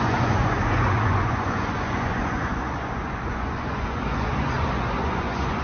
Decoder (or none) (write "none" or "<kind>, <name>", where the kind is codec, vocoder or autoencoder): vocoder, Vocos